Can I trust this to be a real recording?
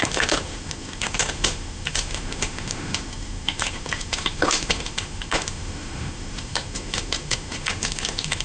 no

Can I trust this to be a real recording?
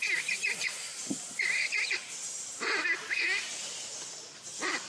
yes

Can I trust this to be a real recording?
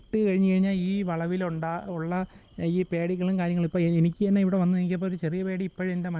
yes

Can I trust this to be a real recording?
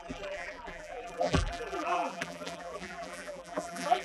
no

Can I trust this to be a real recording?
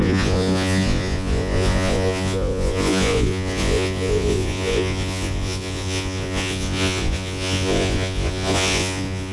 no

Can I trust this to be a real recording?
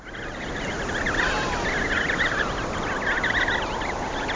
yes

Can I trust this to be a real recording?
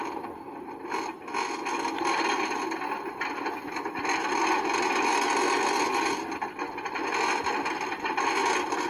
yes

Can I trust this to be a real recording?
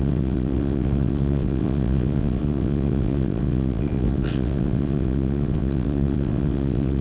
no